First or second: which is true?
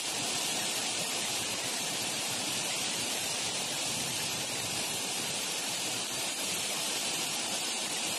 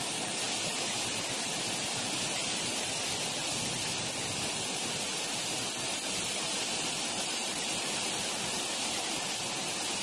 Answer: second